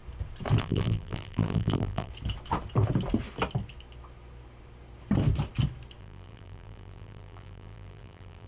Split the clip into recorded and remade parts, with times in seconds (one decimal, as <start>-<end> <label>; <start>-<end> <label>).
0.0-0.6 recorded; 0.6-2.1 remade; 2.1-6.0 recorded; 6.0-8.5 remade